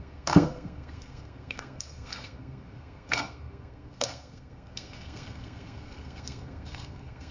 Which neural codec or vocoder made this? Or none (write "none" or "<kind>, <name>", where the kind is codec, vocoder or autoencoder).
codec, SNAC